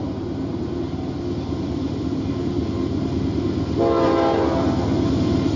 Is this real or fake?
real